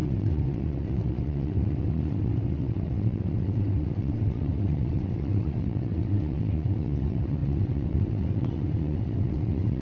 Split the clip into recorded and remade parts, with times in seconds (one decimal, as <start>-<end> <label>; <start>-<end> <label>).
0.0-9.8 remade

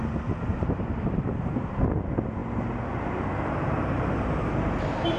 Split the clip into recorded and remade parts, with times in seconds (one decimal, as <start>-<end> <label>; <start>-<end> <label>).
0.0-0.5 recorded; 0.5-1.8 remade; 1.8-2.4 recorded; 2.4-5.2 remade